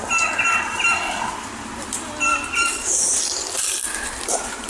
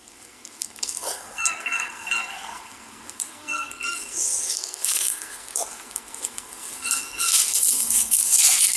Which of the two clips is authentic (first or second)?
first